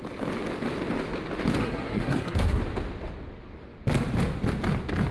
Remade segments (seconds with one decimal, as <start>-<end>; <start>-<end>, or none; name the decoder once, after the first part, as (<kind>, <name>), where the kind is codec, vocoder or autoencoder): 1.6-2.6 (codec, SNAC)